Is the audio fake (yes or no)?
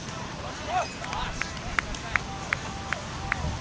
yes